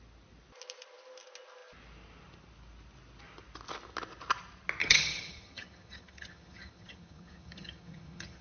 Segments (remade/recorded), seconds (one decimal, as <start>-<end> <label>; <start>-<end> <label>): 0.0-4.8 recorded; 4.8-8.4 remade